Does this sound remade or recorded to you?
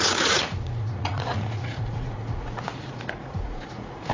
remade